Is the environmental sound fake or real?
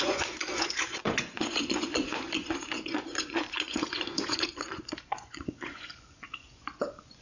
fake